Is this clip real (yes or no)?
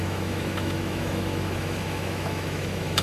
no